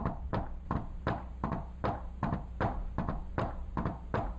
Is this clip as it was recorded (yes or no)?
no